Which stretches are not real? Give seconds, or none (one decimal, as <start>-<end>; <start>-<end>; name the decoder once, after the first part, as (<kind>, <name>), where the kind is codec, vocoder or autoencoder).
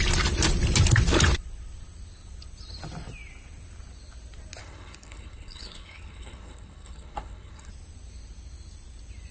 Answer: 4.6-7.7 (codec, HILCodec)